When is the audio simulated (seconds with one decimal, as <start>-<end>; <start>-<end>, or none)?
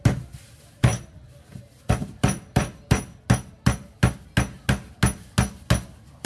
none